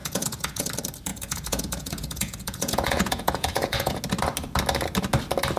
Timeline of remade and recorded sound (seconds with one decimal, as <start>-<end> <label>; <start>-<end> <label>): 0.0-0.7 remade; 0.7-1.1 recorded; 1.1-4.0 remade; 4.0-5.6 recorded